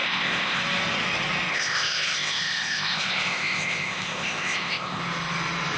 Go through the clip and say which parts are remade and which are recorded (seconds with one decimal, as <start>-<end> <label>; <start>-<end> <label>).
0.0-0.6 remade; 0.6-1.5 recorded; 1.5-5.0 remade; 5.0-5.8 recorded